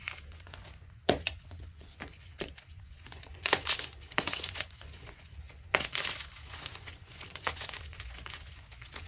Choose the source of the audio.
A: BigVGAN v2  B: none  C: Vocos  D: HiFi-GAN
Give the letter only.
C